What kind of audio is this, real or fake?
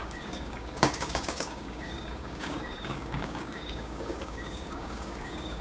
fake